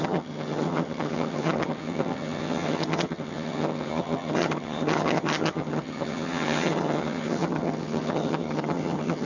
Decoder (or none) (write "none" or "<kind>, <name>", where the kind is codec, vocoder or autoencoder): vocoder, HiFi-GAN